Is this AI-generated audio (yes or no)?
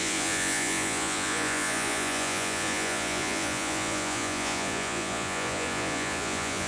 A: yes